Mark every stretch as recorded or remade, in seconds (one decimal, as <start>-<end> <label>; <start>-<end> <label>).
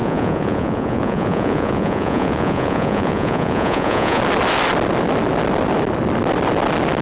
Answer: 0.0-4.2 remade; 4.2-7.0 recorded